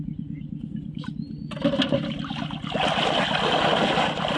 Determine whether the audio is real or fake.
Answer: real